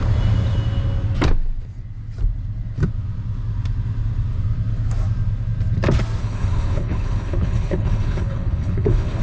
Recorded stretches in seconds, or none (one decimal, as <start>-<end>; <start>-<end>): 0.0-6.2